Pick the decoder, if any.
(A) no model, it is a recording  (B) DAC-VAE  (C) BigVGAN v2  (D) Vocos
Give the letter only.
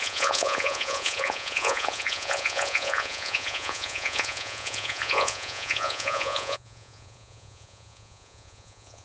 D